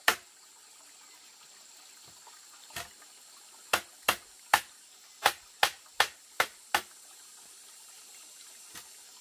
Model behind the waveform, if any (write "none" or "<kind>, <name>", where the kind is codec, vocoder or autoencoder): none